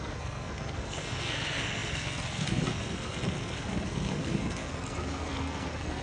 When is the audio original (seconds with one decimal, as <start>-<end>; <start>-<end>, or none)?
none